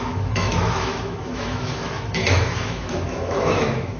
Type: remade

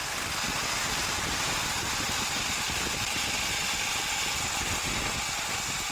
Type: recorded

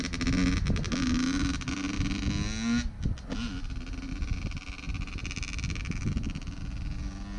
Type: recorded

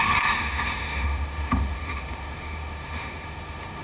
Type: remade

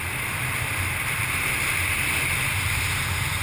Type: recorded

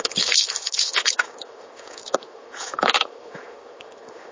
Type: remade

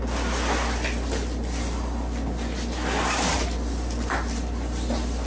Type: recorded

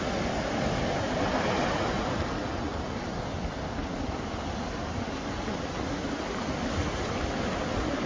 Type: recorded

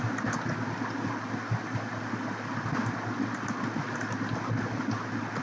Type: recorded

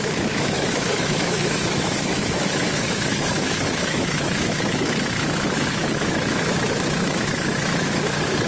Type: remade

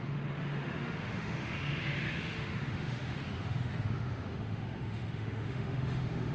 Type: remade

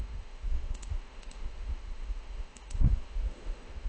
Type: remade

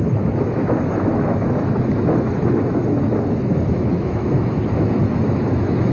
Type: remade